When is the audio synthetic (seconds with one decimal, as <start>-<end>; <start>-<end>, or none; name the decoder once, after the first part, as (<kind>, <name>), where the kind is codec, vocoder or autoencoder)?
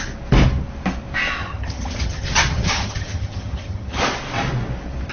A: 1.4-4.0 (vocoder, HiFi-GAN)